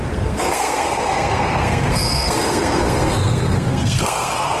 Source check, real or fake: fake